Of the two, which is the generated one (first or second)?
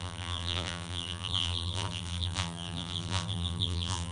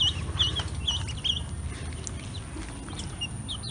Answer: first